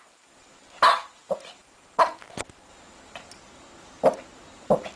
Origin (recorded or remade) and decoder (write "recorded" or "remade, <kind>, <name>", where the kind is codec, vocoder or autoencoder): recorded